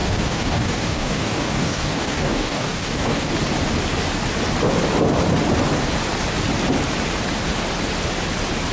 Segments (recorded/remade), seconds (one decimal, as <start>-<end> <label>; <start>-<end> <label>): 0.0-3.3 remade; 3.3-8.7 recorded